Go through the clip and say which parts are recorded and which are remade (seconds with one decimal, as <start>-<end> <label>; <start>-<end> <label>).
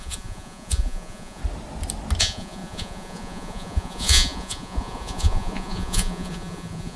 0.0-1.4 remade; 1.4-2.2 recorded; 2.2-7.0 remade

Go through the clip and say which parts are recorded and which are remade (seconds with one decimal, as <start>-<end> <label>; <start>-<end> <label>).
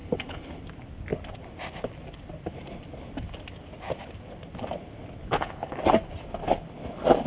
0.0-0.6 remade; 0.6-5.2 recorded; 5.2-5.8 remade; 5.8-7.3 recorded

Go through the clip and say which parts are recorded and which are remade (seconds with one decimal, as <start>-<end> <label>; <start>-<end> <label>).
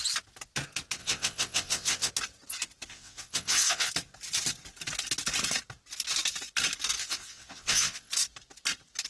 0.0-1.0 recorded; 1.0-2.1 remade; 2.1-2.9 recorded; 2.9-3.9 remade; 3.9-7.0 recorded; 7.0-8.1 remade; 8.1-9.1 recorded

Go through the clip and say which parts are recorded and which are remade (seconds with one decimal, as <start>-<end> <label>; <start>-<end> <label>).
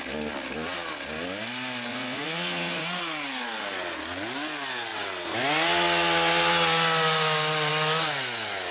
0.0-1.9 recorded; 1.9-2.8 remade; 2.8-8.7 recorded